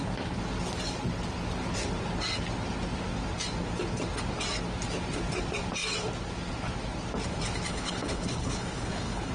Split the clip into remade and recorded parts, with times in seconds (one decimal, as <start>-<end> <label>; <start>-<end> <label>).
0.0-7.7 recorded; 7.7-9.3 remade

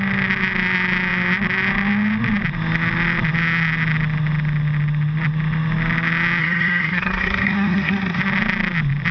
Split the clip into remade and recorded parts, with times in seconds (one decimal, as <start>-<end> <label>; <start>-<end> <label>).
0.0-6.4 recorded; 6.4-8.2 remade; 8.2-9.1 recorded

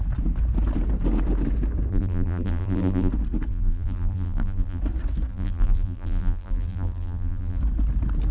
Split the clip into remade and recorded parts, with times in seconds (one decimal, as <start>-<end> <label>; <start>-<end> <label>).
0.0-1.9 recorded; 1.9-3.1 remade; 3.1-3.5 recorded; 3.5-4.8 remade; 4.8-5.3 recorded; 5.3-7.6 remade; 7.6-8.3 recorded

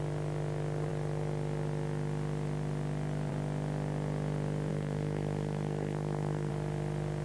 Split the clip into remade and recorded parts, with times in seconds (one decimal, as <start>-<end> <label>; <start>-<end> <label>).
0.0-4.7 recorded; 4.7-6.5 remade; 6.5-7.2 recorded

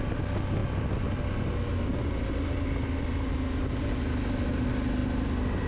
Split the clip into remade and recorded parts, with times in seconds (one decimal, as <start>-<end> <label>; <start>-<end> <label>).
0.0-5.7 recorded

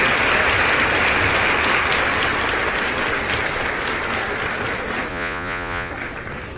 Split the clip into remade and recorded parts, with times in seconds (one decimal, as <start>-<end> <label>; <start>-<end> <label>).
0.0-5.1 recorded; 5.1-5.9 remade; 5.9-6.6 recorded